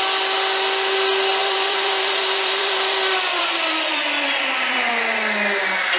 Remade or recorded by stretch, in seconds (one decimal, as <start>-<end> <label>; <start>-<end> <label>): 0.0-1.4 recorded; 1.4-4.9 remade; 4.9-6.0 recorded